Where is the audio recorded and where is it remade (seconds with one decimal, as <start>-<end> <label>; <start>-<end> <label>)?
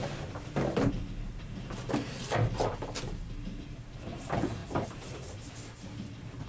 0.0-6.5 remade